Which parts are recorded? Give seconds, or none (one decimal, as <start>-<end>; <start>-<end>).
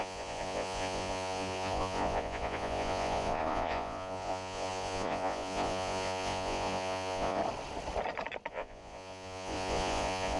7.4-8.5